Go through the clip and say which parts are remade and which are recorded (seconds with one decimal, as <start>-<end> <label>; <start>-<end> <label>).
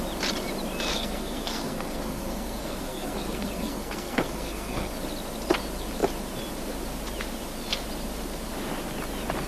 0.0-0.9 recorded; 0.9-4.9 remade; 4.9-9.5 recorded